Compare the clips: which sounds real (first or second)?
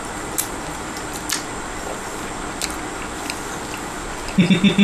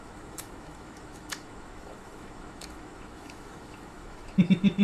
first